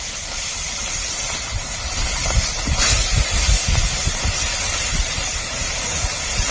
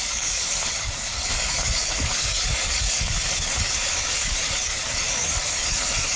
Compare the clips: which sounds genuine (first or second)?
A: first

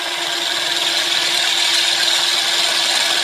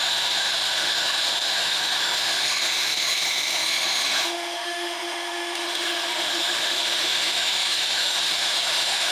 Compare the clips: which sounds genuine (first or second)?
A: first